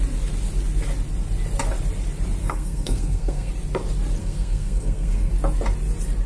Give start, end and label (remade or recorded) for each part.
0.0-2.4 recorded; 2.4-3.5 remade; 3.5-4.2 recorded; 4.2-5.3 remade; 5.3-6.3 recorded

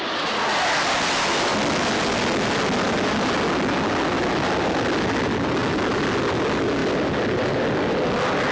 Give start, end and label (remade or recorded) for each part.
0.0-8.5 recorded

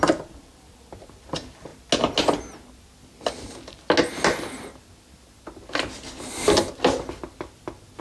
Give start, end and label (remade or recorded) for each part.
0.0-8.0 recorded

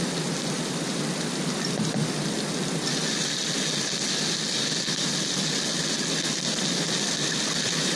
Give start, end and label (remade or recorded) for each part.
0.0-2.0 remade; 2.0-6.1 recorded; 6.1-8.0 remade

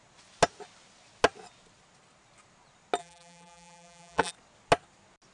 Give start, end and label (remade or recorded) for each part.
0.0-3.0 recorded; 3.0-4.3 remade; 4.3-5.3 recorded

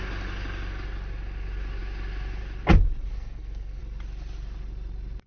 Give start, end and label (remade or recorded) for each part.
0.0-3.1 recorded; 3.1-3.8 remade; 3.8-5.3 recorded

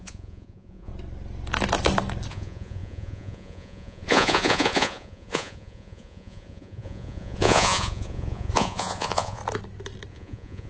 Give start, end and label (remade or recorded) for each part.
0.0-0.9 remade; 0.9-2.3 recorded; 2.3-9.4 remade; 9.4-10.1 recorded; 10.1-10.7 remade